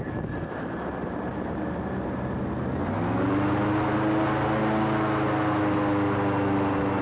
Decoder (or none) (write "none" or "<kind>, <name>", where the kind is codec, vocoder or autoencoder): none